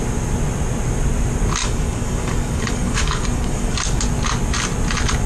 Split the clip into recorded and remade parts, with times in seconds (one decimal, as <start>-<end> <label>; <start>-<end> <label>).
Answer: 0.0-1.6 recorded; 1.6-4.0 remade; 4.0-5.3 recorded